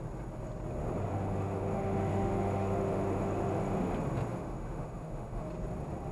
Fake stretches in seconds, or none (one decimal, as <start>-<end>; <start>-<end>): 1.1-3.7; 4.3-5.5